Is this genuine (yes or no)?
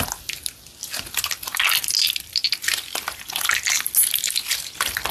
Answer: yes